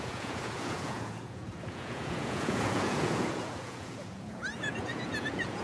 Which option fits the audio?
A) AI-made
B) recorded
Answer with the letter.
A